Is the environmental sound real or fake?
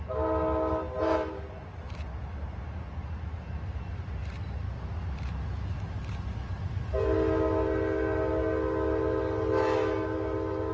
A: real